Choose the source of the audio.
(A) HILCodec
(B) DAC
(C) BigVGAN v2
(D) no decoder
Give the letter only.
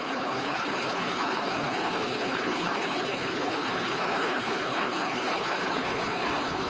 A